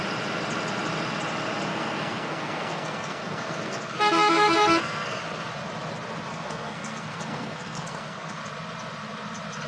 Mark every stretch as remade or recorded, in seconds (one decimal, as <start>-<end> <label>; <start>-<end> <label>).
0.0-1.7 recorded; 1.7-5.2 remade; 5.2-6.3 recorded; 6.3-8.4 remade; 8.4-9.7 recorded